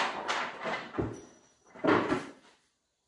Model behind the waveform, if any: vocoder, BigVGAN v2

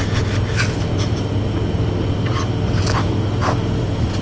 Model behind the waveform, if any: none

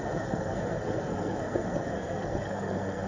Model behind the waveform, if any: codec, SNAC